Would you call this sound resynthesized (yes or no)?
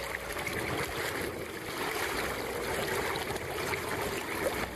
no